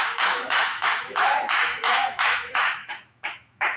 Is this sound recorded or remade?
remade